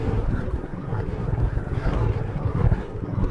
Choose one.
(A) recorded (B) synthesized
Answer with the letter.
B